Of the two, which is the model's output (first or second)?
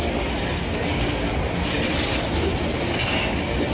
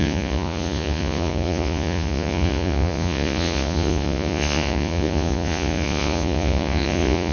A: second